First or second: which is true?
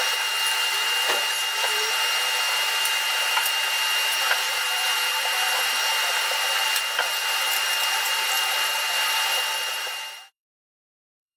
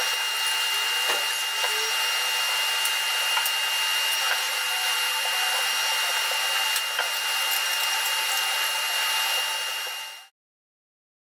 second